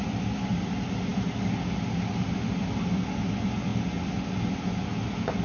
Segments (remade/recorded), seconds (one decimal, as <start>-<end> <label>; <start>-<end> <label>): 0.0-5.4 recorded